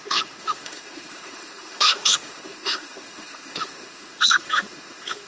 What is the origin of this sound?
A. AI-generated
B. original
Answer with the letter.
A